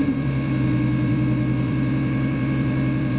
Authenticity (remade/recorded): remade